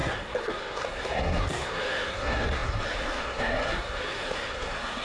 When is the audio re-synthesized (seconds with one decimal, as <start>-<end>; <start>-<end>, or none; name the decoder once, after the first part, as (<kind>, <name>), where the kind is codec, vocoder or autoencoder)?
0.0-5.0 (codec, SNAC)